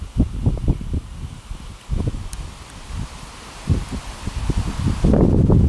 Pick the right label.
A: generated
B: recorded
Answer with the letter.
B